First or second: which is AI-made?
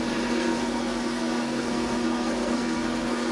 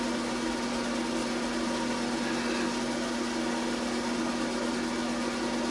first